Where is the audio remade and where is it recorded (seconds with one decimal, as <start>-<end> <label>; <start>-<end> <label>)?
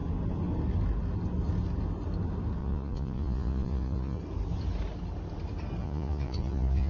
0.0-2.6 recorded; 2.6-4.2 remade; 4.2-5.8 recorded; 5.8-6.9 remade